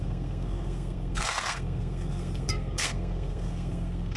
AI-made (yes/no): yes